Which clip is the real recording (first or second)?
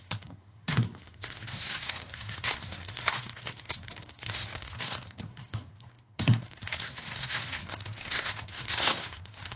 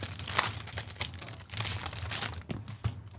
second